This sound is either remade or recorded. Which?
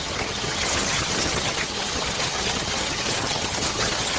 remade